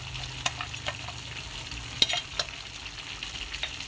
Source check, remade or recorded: recorded